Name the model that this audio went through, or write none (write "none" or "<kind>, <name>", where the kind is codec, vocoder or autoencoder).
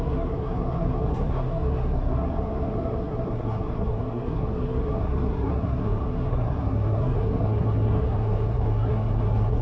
codec, SNAC